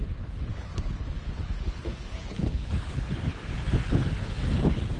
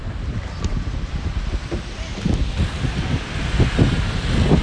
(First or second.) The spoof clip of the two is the first